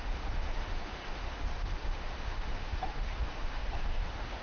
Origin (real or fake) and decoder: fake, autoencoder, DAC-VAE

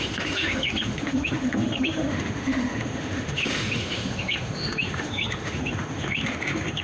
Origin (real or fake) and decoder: fake, autoencoder, DAC-VAE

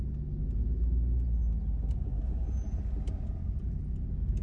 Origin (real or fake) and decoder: real